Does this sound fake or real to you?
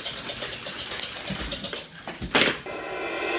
real